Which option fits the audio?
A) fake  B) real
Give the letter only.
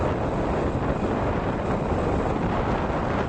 B